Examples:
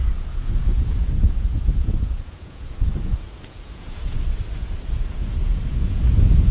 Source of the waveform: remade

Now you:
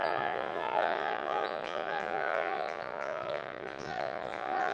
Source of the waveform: remade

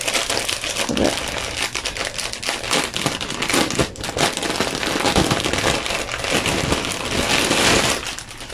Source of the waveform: recorded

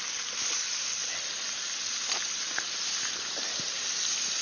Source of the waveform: recorded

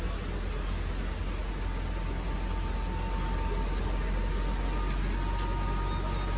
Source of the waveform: recorded